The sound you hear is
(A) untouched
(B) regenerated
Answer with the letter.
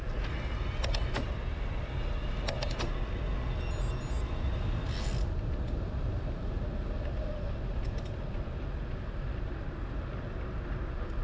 A